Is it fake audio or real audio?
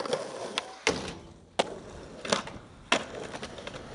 real